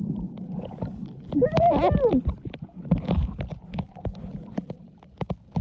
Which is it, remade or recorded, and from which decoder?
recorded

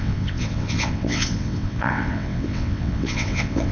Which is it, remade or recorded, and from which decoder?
remade, vocoder, WaveNeXt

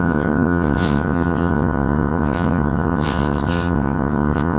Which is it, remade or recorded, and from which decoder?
remade, vocoder, WaveNeXt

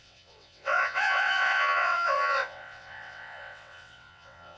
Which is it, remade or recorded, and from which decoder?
remade, vocoder, WaveNeXt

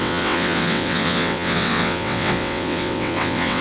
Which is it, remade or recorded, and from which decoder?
remade, vocoder, WaveNeXt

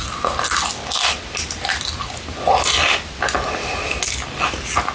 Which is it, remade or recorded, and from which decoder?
recorded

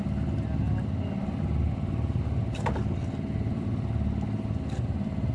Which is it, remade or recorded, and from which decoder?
recorded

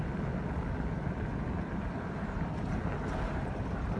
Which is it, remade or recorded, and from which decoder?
recorded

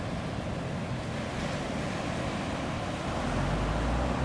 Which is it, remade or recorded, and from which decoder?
recorded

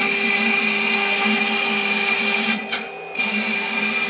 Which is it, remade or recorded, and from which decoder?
recorded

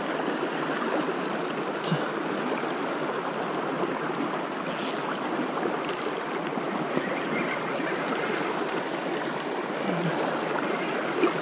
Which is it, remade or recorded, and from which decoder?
recorded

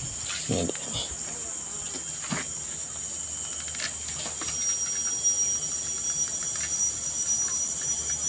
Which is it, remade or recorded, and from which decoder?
recorded